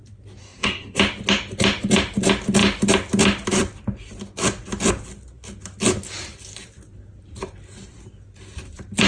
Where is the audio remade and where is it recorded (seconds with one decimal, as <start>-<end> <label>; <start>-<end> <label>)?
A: 0.0-0.4 recorded; 0.4-1.0 remade; 1.0-9.1 recorded